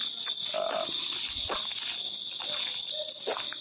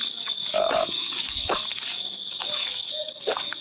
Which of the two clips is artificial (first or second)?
second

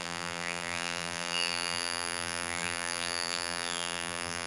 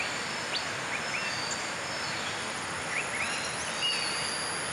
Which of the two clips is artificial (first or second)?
first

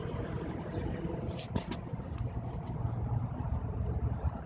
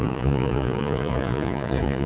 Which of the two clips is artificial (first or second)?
second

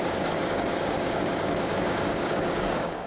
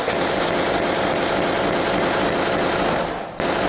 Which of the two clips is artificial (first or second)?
first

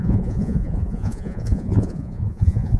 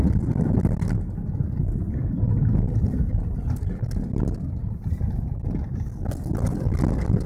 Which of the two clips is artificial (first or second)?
first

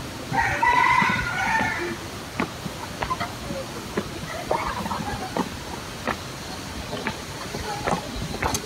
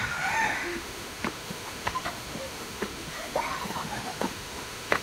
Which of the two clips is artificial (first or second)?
second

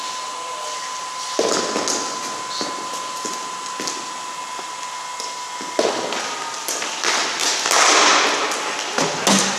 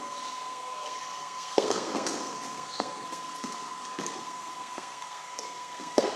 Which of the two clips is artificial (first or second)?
second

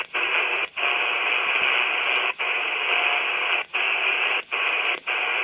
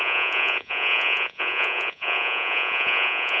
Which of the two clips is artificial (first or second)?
second